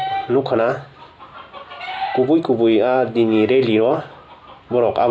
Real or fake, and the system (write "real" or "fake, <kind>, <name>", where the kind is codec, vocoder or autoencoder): real